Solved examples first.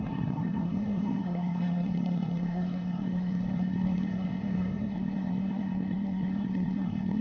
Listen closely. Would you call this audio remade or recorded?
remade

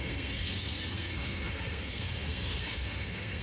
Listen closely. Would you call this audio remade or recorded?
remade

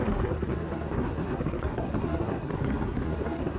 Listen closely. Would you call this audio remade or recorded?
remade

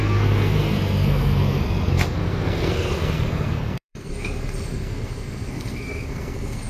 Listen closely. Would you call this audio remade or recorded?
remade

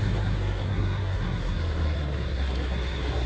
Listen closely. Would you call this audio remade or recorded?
remade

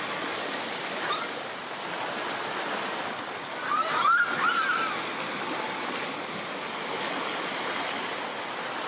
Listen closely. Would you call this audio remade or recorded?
recorded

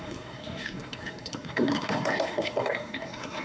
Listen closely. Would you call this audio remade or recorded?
remade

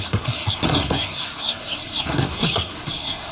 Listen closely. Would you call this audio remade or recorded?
remade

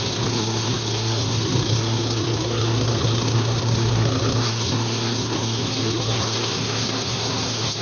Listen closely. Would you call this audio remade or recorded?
remade